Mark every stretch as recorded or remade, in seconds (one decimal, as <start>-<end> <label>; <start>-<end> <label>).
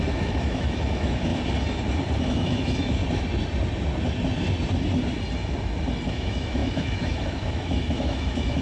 0.0-1.3 remade; 1.3-2.2 recorded; 2.2-3.0 remade; 3.0-6.1 recorded; 6.1-8.6 remade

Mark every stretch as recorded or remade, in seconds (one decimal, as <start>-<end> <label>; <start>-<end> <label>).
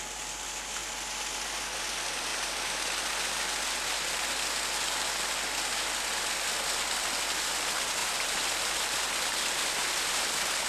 0.0-10.7 recorded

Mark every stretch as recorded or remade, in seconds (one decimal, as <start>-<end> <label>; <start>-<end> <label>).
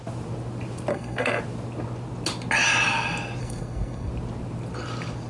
0.0-0.9 recorded; 0.9-1.4 remade; 1.4-3.4 recorded; 3.4-4.1 remade; 4.1-5.3 recorded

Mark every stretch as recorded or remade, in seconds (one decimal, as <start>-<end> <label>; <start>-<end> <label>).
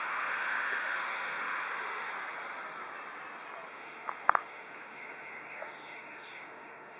0.0-2.1 remade; 2.1-3.7 recorded; 3.7-7.0 remade